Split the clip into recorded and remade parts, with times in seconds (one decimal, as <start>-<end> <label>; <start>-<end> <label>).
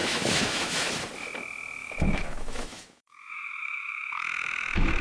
0.0-0.9 remade; 0.9-1.8 recorded; 1.8-5.0 remade